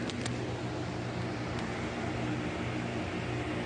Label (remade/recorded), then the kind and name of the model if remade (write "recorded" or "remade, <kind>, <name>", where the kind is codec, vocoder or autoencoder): recorded